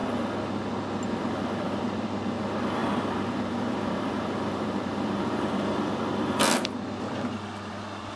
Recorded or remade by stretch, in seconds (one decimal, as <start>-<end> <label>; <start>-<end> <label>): 0.0-1.1 recorded; 1.1-8.2 remade